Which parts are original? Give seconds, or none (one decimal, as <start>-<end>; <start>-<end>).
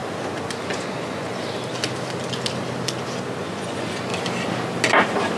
0.0-0.6; 1.3-3.4; 4.1-5.4